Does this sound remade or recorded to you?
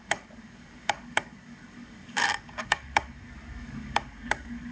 remade